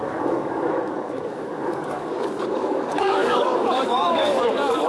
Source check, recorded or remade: remade